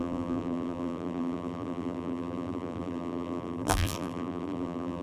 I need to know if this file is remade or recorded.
remade